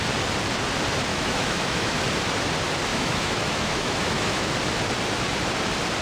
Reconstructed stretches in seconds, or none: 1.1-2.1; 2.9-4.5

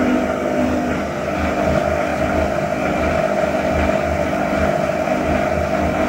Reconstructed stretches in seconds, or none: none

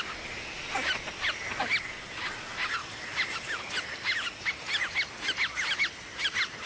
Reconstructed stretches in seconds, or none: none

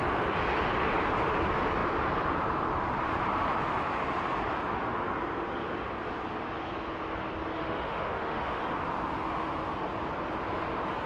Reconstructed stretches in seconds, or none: 7.6-8.6

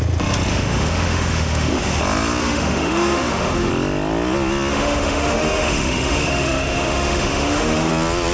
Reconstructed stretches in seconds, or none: 0.5-2.0; 2.4-3.7; 4.7-7.9

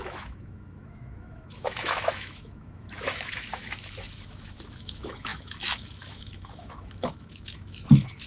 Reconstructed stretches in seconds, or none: 0.0-8.3

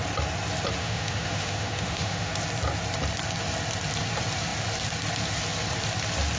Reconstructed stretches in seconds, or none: 0.8-2.3